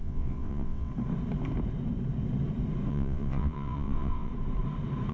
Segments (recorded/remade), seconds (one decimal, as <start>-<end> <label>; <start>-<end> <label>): 0.0-0.9 remade; 0.9-2.9 recorded; 2.9-4.3 remade; 4.3-5.1 recorded